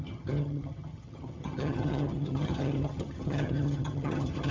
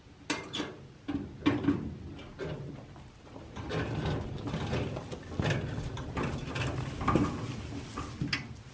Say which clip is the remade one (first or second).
first